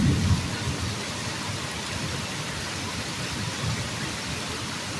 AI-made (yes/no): no